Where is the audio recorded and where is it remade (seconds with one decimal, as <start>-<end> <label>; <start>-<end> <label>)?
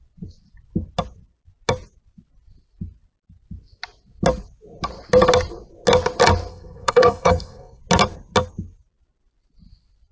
0.0-6.5 recorded; 6.5-7.8 remade; 7.8-10.1 recorded